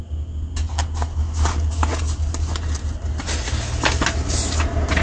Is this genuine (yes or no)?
yes